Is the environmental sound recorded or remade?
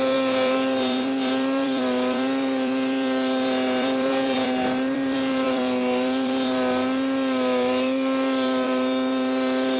remade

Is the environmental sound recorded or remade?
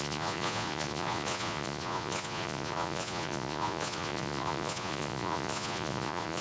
remade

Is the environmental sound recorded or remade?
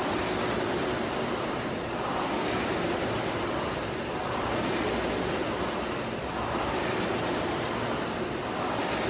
recorded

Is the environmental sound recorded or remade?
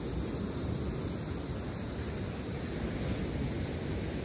recorded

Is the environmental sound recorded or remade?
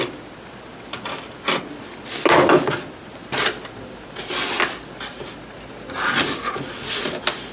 recorded